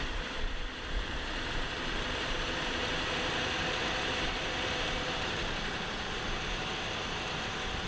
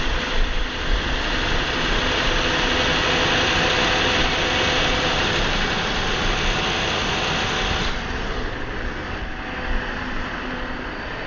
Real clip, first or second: second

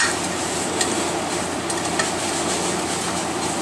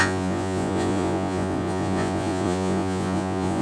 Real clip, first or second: first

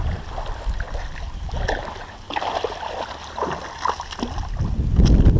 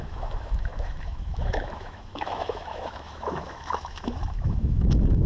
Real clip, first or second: first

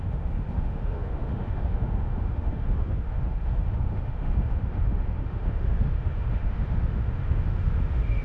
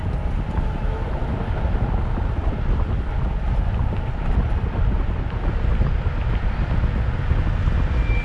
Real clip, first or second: second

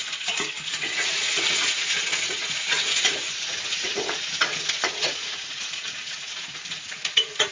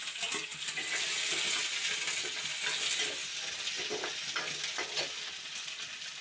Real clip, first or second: second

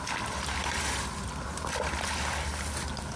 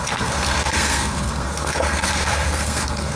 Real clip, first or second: first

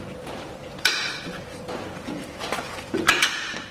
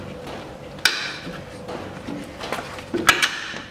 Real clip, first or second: second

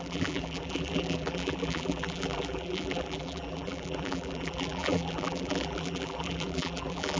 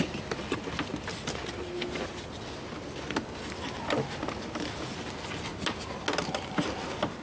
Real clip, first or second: second